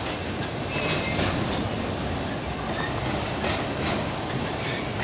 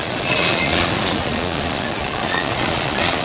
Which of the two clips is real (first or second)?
first